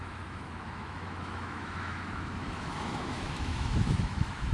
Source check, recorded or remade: remade